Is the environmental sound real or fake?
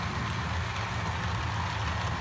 real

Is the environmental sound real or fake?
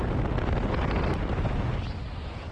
real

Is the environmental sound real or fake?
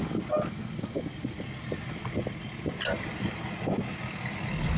real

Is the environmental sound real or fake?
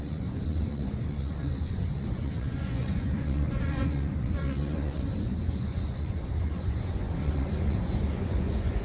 fake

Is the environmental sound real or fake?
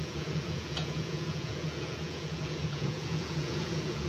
fake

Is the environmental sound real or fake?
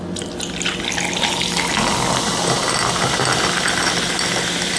real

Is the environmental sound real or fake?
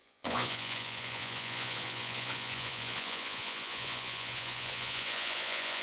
fake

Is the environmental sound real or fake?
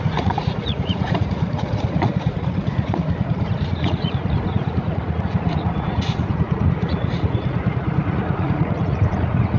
fake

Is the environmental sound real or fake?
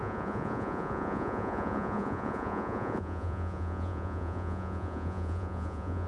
fake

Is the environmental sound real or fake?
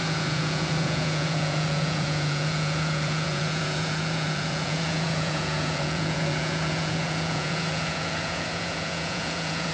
fake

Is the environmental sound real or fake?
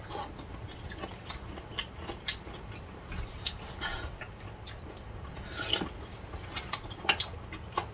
real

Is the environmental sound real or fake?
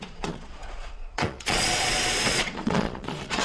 fake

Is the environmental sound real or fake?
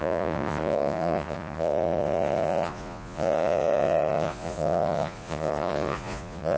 fake